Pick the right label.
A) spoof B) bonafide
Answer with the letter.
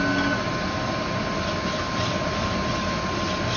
B